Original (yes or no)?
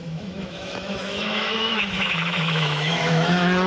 no